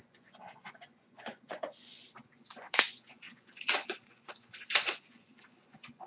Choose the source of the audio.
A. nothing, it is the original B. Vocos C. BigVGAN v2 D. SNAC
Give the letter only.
B